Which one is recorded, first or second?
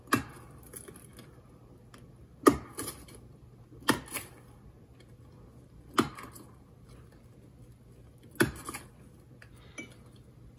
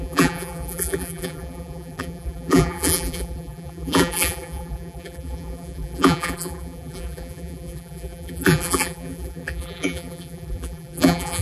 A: first